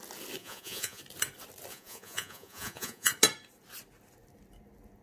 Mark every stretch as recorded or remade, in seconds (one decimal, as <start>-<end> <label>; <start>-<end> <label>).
0.0-0.4 recorded; 0.4-1.0 remade; 1.0-1.7 recorded; 1.7-3.1 remade; 3.1-5.0 recorded